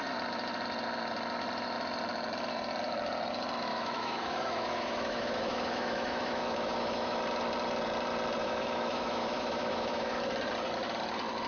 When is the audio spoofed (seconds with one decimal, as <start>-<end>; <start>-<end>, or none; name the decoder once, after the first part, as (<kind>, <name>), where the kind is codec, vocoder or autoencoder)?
3.7-7.2 (autoencoder, DAC-VAE); 8.4-10.2